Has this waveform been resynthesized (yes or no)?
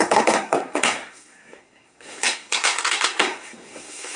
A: yes